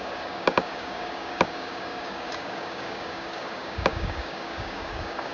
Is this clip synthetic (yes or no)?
yes